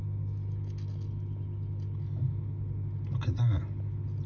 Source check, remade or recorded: recorded